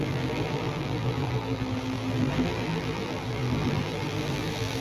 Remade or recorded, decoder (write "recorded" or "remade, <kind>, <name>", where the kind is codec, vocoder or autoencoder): remade, vocoder, BigVGAN v2